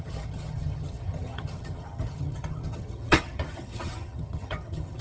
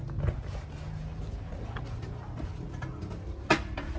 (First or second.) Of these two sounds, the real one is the second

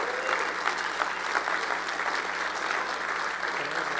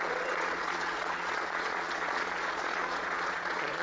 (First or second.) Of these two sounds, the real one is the first